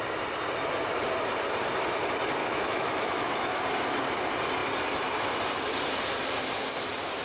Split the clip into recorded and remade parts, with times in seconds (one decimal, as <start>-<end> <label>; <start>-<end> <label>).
0.0-2.4 recorded; 2.4-3.5 remade; 3.5-7.2 recorded